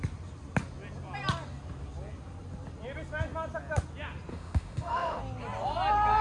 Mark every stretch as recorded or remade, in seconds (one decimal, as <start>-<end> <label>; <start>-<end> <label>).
0.0-4.3 recorded; 4.3-5.2 remade; 5.2-6.2 recorded